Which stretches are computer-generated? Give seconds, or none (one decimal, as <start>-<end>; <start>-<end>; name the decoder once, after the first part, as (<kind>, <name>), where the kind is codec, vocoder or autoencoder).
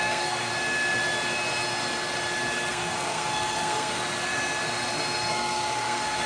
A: 0.0-0.5 (codec, SNAC); 2.7-4.0; 5.3-6.3